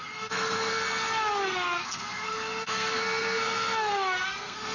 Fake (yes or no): yes